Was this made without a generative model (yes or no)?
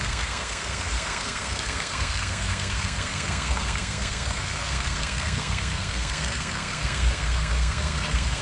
no